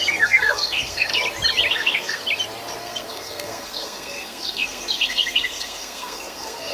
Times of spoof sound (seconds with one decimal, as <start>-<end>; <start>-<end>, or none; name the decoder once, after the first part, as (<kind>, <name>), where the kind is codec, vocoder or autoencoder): 0.0-1.1 (codec, SNAC); 1.7-2.2; 2.8-6.7

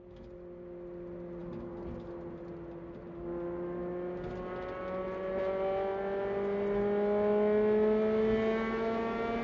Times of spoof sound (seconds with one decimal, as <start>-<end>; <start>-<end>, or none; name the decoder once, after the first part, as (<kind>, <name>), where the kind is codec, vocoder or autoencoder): none

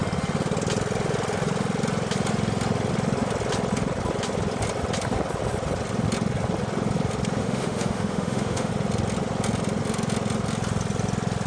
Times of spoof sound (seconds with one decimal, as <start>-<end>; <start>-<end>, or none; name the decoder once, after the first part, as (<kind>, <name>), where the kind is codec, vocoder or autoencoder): 7.4-8.7 (autoencoder, DAC-VAE)